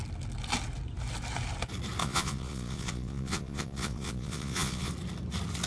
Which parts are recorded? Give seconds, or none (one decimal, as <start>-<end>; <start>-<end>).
0.0-2.0; 4.9-5.7